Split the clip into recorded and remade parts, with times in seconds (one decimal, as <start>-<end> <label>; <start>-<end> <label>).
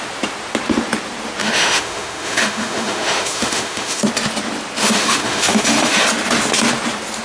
0.0-1.4 recorded; 1.4-4.0 remade; 4.0-4.8 recorded; 4.8-6.0 remade; 6.0-7.2 recorded